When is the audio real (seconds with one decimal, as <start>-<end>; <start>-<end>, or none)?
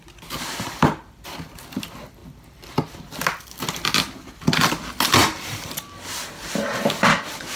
0.0-2.2; 3.0-5.2; 5.7-7.6